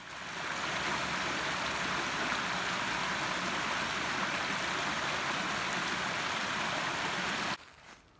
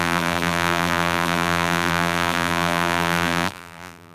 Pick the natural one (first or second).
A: first